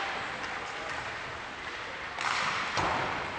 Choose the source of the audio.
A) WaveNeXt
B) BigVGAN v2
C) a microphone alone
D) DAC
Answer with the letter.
C